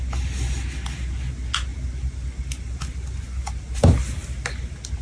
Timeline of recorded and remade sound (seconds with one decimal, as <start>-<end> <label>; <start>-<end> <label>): 0.0-5.0 recorded